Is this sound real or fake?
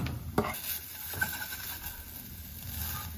real